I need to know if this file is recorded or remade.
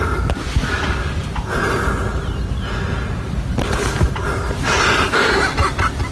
recorded